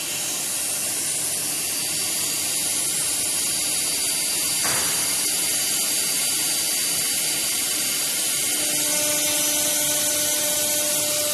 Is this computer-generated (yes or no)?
no